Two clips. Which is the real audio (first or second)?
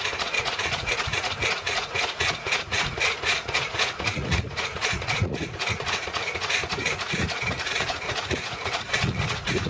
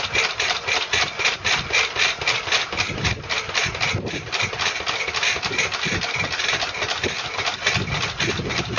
second